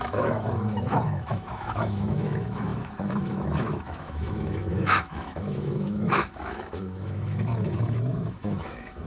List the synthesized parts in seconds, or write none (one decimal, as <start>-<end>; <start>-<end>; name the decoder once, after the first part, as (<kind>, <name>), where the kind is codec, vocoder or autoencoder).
0.0-9.1 (autoencoder, DAC-VAE)